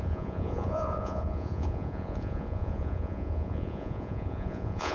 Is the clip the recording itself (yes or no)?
no